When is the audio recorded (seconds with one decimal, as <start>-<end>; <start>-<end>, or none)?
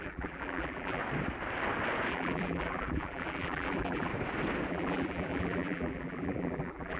1.0-2.1; 4.1-4.7